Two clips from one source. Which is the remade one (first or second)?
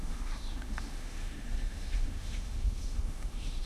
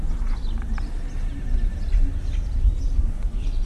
first